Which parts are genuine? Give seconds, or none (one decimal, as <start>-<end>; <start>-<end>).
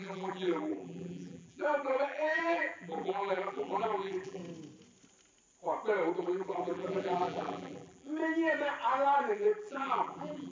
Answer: 4.4-6.2; 8.2-9.3